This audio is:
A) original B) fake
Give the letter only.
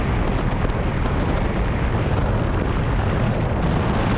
A